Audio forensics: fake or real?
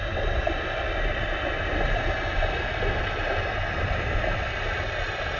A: real